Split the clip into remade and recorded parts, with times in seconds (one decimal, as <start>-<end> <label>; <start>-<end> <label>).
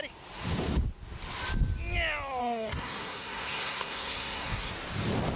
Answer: 0.0-2.4 recorded; 2.4-4.7 remade; 4.7-5.4 recorded